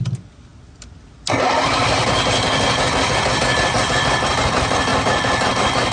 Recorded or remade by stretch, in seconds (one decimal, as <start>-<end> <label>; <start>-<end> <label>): 0.0-5.9 recorded